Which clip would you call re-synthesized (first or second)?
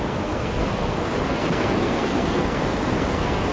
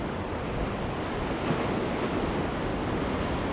first